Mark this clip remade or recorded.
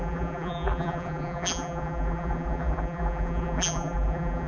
remade